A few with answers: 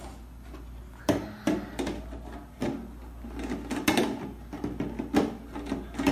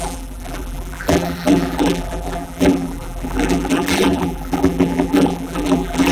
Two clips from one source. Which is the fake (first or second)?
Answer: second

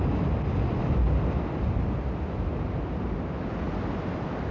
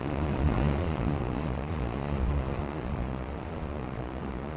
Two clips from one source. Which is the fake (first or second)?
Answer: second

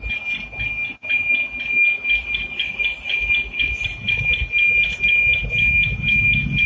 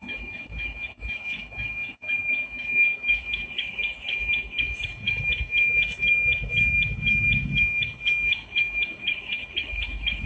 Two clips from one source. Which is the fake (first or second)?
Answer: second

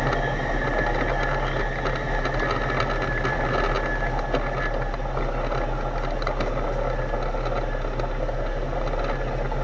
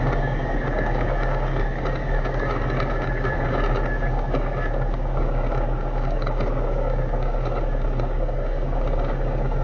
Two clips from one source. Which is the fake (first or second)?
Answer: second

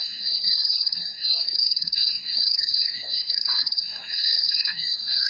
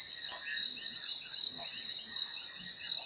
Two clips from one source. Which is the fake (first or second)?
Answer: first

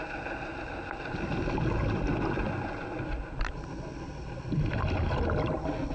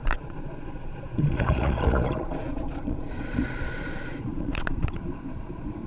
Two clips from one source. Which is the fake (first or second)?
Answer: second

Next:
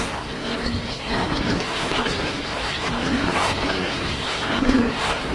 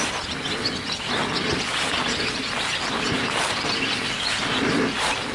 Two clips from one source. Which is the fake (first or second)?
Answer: first